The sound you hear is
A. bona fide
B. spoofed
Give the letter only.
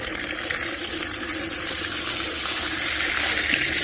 A